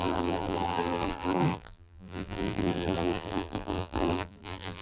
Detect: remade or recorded remade